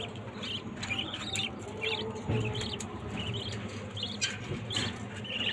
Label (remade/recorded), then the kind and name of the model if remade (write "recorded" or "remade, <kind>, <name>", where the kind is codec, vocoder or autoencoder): recorded